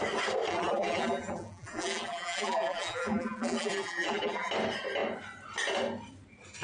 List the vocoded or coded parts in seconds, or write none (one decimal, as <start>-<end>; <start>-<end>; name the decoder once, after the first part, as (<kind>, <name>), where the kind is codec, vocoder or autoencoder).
0.5-4.5 (vocoder, BigVGAN v2)